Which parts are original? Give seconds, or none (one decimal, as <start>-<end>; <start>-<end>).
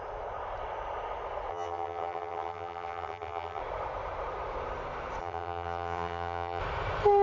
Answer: 0.0-1.5; 3.6-5.2; 6.6-7.2